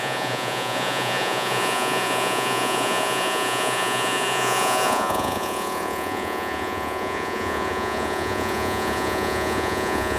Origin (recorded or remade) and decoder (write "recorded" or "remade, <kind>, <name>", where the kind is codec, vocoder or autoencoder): remade, vocoder, Vocos